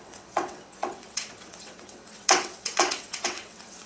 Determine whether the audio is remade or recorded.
remade